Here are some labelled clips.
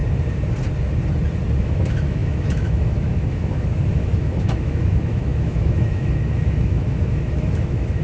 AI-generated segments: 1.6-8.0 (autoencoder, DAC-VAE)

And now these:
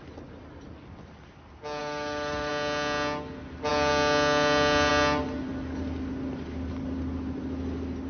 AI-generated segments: 1.8-2.5 (autoencoder, DAC-VAE)

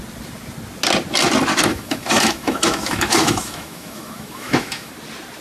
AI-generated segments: 1.7-4.9 (autoencoder, DAC-VAE)

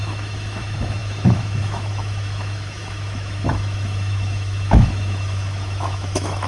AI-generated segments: 0.0-6.5 (autoencoder, DAC-VAE)